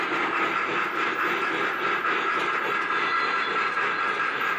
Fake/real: real